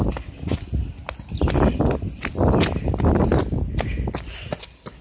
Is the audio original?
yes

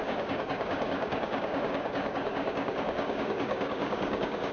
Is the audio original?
no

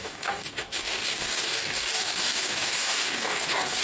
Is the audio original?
no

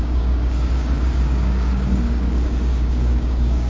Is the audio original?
no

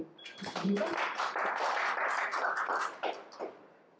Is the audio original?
yes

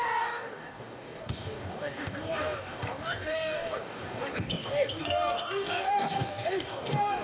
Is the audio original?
no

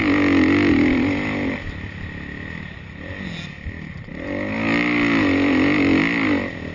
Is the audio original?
yes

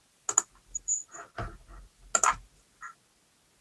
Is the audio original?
yes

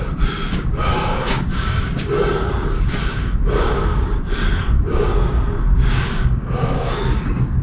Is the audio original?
no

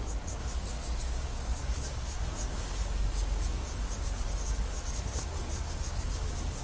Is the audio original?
no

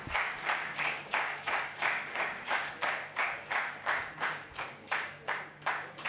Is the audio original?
no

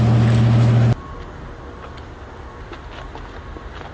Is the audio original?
yes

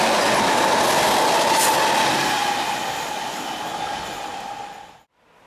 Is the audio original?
yes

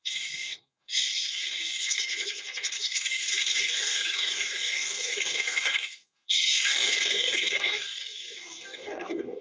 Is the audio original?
no